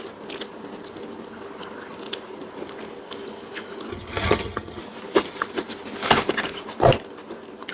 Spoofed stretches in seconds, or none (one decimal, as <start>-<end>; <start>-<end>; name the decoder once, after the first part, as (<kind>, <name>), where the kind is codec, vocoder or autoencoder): 3.9-4.8 (vocoder, HiFi-GAN)